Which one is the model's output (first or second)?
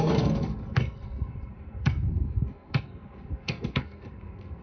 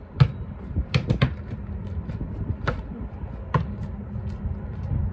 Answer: first